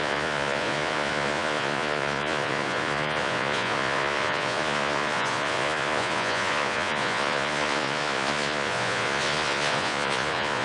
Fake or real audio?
fake